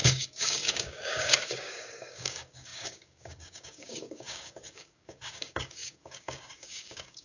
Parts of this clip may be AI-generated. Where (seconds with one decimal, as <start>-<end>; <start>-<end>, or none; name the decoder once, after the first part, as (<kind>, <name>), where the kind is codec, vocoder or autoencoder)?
0.0-7.2 (codec, DAC)